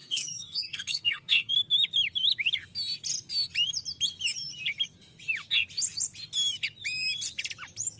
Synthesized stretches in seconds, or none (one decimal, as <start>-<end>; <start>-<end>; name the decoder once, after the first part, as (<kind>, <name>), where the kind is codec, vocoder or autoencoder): 0.0-1.5 (codec, SNAC)